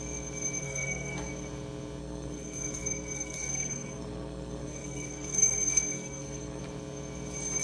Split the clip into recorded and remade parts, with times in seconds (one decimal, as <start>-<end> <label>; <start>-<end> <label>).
0.0-0.6 recorded; 0.6-1.3 remade; 1.3-2.0 recorded; 2.0-6.6 remade; 6.6-7.6 recorded